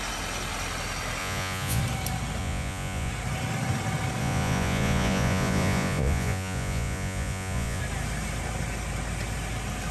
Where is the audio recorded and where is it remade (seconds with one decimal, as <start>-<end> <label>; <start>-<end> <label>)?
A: 0.0-1.2 recorded; 1.2-1.8 remade; 1.8-2.4 recorded; 2.4-3.1 remade; 3.1-4.2 recorded; 4.2-7.8 remade; 7.8-9.9 recorded